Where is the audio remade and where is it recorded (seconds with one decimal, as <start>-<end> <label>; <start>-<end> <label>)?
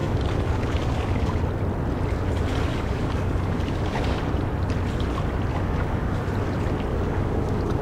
0.0-1.4 remade; 1.4-2.7 recorded; 2.7-4.2 remade; 4.2-5.5 recorded; 5.5-6.2 remade; 6.2-6.9 recorded; 6.9-7.8 remade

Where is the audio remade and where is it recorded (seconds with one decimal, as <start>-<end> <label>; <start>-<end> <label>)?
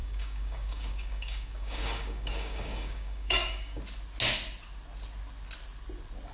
0.0-3.8 remade; 3.8-6.3 recorded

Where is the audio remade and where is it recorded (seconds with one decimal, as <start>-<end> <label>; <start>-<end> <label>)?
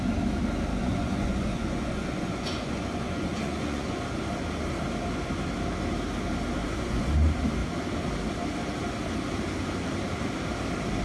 0.0-0.7 recorded; 0.7-4.0 remade; 4.0-6.6 recorded; 6.6-7.1 remade; 7.1-11.0 recorded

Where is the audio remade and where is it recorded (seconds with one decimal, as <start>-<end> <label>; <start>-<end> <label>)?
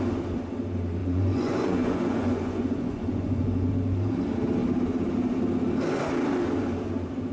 0.0-1.0 recorded; 1.0-3.7 remade; 3.7-7.3 recorded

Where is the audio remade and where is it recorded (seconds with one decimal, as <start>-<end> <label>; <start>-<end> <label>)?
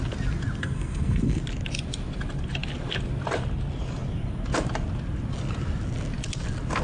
0.0-0.6 recorded; 0.6-1.4 remade; 1.4-6.8 recorded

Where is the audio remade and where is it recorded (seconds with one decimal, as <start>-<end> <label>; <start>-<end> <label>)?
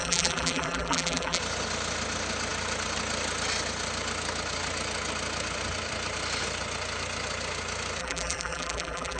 0.0-1.4 remade; 1.4-8.0 recorded; 8.0-9.2 remade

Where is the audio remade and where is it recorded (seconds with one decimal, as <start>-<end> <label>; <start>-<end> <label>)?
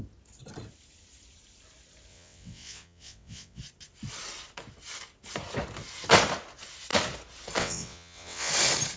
0.0-2.1 recorded; 2.1-3.6 remade; 3.6-7.6 recorded; 7.6-8.5 remade; 8.5-9.0 recorded